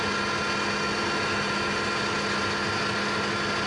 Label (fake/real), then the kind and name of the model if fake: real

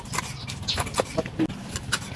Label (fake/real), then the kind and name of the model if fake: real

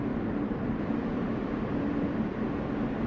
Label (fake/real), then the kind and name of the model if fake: real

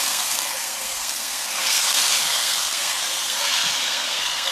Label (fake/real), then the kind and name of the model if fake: fake, codec, SNAC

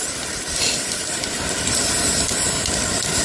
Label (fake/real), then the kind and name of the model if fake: real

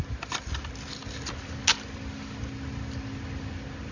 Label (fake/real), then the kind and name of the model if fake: real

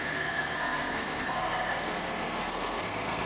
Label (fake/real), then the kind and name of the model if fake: fake, codec, SNAC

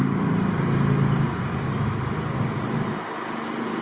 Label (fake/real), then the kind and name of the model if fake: real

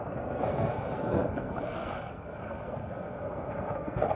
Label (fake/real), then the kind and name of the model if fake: fake, codec, SNAC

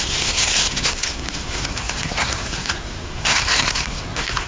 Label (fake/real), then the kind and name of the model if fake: fake, codec, SNAC